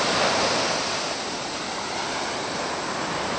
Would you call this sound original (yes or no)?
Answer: yes